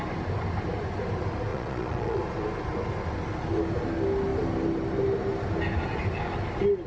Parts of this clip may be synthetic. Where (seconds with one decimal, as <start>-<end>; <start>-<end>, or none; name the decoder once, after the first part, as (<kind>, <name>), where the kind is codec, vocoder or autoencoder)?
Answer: 1.5-2.2 (vocoder, Vocos)